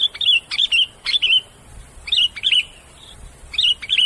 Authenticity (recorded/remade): recorded